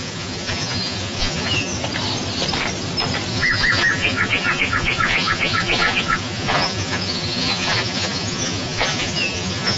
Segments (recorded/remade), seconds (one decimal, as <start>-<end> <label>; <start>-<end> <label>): 0.0-1.7 remade; 1.7-3.3 recorded; 3.3-9.8 remade